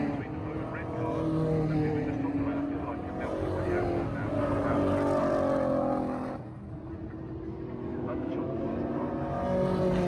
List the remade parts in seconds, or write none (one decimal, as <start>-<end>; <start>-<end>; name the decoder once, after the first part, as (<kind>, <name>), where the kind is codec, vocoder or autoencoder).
7.9-8.5 (autoencoder, DAC-VAE)